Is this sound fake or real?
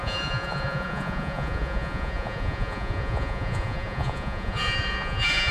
fake